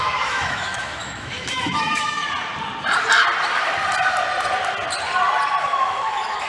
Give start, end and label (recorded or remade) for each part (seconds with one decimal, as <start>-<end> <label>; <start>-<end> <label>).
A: 0.0-2.2 remade; 2.2-5.6 recorded; 5.6-6.5 remade